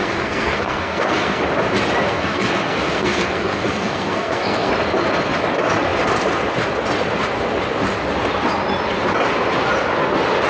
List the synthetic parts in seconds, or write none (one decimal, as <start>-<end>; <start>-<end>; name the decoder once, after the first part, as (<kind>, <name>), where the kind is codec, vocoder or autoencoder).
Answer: 0.0-1.4 (codec, SNAC); 2.0-4.7